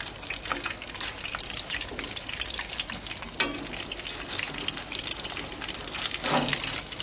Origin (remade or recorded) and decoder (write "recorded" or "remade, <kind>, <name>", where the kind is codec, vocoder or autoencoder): recorded